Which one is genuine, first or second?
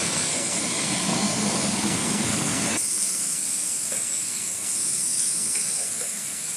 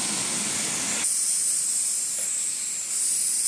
second